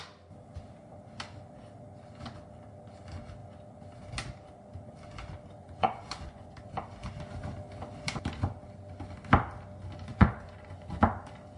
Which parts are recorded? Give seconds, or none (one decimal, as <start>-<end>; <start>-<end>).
0.0-5.6; 6.5-10.1; 11.0-11.6

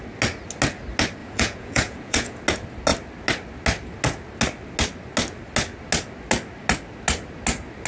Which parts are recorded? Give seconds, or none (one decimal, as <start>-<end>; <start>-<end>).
0.0-1.2; 2.4-7.9

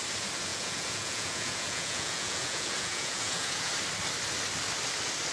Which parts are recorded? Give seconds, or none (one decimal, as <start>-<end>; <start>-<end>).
0.0-0.5; 3.7-5.3